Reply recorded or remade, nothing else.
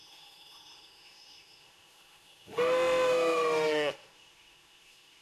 remade